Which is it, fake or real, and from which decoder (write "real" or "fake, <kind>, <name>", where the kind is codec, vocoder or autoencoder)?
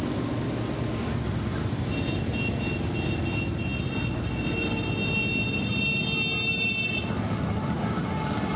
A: real